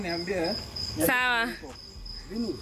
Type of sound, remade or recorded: recorded